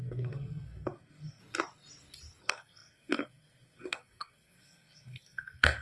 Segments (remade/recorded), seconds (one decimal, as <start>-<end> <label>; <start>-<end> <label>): 0.0-1.4 remade; 1.4-2.4 recorded; 2.4-5.8 remade